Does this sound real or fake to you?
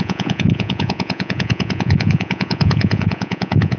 fake